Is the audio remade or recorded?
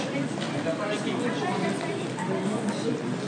recorded